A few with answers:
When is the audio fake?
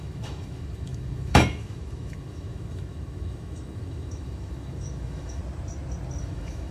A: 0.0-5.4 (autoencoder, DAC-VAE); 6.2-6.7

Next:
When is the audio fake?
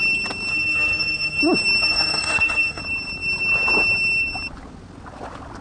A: 0.5-1.4 (autoencoder, DAC-VAE); 1.8-2.8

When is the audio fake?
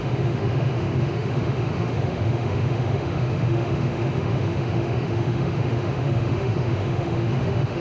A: 0.0-7.8 (autoencoder, DAC-VAE)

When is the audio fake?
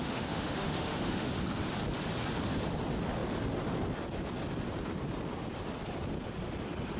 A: 0.0-1.3 (autoencoder, DAC-VAE)